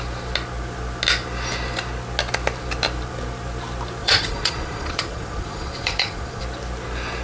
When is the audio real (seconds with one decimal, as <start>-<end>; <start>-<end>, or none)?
0.0-4.0; 6.4-7.2

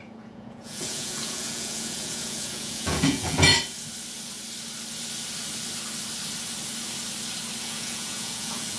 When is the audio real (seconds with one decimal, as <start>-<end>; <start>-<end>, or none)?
3.5-7.6